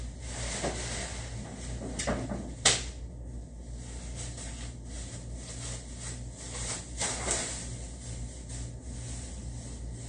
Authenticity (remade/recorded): recorded